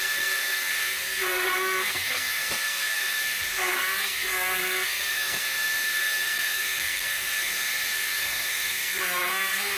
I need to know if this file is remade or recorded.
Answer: remade